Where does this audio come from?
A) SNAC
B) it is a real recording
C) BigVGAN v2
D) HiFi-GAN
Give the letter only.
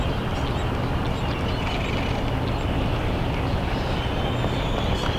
B